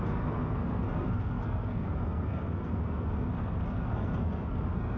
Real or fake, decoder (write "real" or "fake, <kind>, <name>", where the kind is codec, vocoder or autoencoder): fake, codec, SNAC